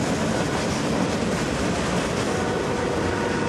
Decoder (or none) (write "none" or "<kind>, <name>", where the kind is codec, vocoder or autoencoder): none